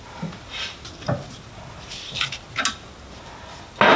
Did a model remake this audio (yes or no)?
no